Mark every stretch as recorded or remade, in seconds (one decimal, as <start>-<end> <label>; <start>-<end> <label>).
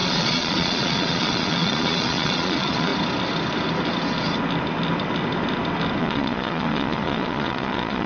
0.0-2.9 remade; 2.9-6.0 recorded; 6.0-8.1 remade